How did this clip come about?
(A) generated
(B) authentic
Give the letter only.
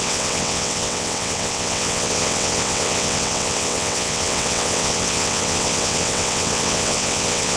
A